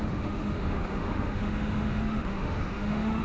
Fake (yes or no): yes